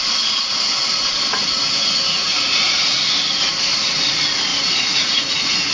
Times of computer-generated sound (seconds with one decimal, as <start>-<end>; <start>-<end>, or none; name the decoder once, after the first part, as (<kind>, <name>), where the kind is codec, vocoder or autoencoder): 1.8-2.9 (vocoder, Vocos); 4.5-5.7